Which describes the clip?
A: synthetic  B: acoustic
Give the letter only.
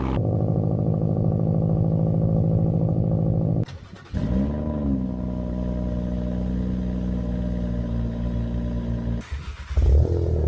B